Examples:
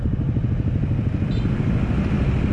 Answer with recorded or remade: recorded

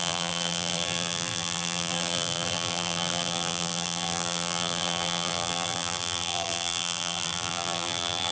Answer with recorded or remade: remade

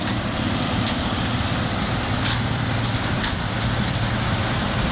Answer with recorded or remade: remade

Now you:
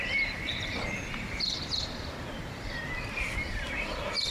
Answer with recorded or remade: remade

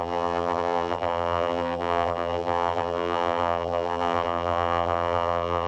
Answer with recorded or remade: remade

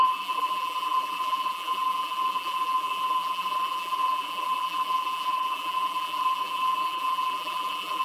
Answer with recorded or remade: remade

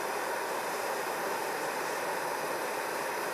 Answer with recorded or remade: remade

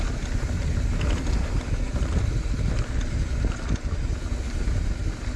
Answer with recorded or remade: recorded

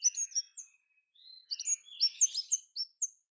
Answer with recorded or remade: recorded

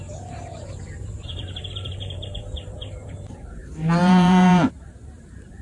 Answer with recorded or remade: remade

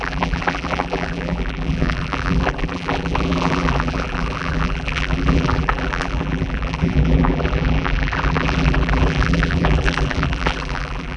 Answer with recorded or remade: remade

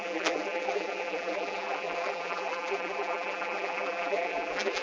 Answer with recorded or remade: remade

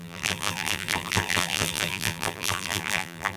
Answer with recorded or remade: remade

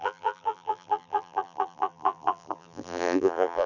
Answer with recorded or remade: remade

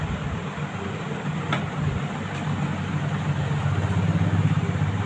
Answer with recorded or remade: recorded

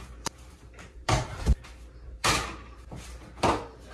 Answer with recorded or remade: remade